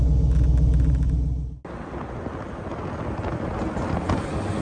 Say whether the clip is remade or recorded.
recorded